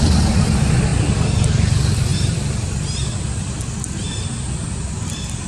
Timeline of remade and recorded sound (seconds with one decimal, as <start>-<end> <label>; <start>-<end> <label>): 0.0-0.9 recorded; 0.9-1.5 remade; 1.5-5.5 recorded